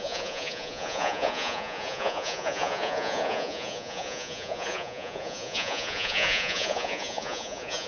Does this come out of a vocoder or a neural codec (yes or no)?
yes